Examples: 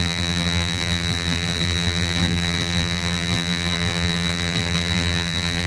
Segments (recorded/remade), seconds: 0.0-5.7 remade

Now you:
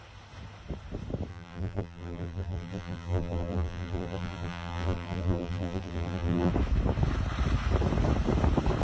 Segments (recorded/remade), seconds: 0.0-1.3 recorded; 1.3-6.5 remade; 6.5-8.8 recorded

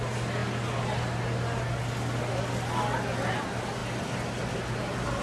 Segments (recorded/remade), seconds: 0.0-5.2 recorded

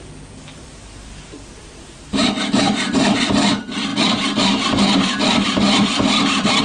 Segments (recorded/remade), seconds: 0.0-2.1 recorded; 2.1-3.5 remade; 3.5-3.9 recorded; 3.9-6.6 remade

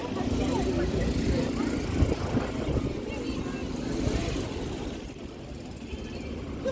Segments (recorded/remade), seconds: 0.0-6.7 recorded

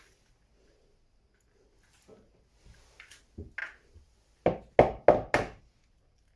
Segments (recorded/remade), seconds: 0.0-6.4 recorded

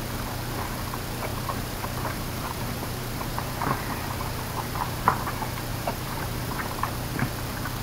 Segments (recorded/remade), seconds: 0.0-1.3 recorded; 1.3-5.3 remade; 5.3-5.7 recorded; 5.7-7.3 remade; 7.3-7.8 recorded

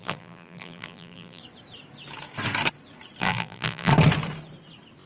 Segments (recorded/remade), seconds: 0.0-1.4 remade; 1.4-3.2 recorded; 3.2-3.9 remade; 3.9-5.1 recorded